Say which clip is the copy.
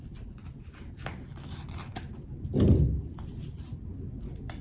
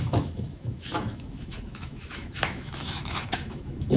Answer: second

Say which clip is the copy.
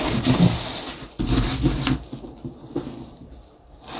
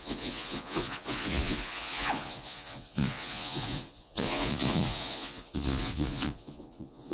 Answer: second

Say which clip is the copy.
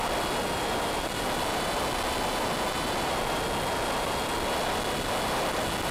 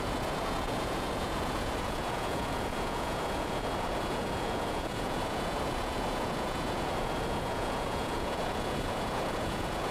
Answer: second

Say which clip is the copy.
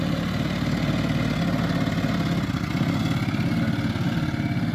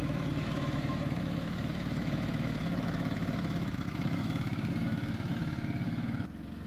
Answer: second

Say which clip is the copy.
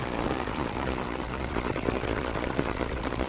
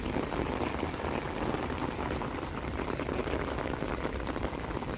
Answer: first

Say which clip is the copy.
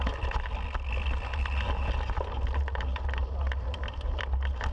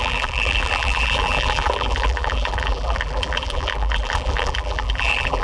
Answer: second